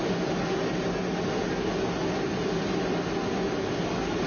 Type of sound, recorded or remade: recorded